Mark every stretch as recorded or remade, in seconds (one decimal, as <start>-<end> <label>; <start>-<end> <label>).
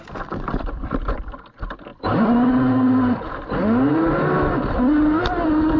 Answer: 0.0-5.8 recorded